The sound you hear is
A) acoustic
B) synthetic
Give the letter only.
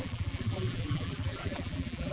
B